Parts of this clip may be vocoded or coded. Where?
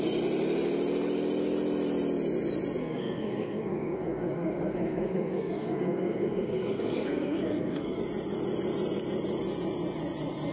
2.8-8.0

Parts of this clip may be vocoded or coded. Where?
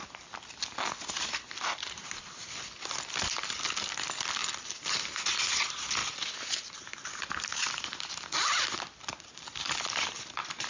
1.2-4.4; 4.9-6.0; 6.8-10.7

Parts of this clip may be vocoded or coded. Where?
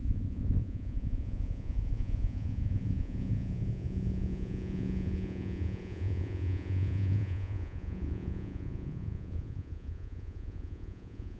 0.0-11.4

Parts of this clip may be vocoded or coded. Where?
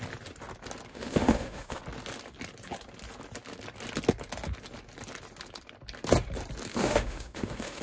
0.9-1.8; 6.7-7.8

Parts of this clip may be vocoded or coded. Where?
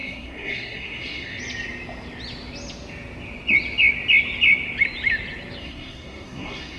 0.0-1.4; 5.6-6.8